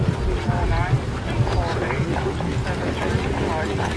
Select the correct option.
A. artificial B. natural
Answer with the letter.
B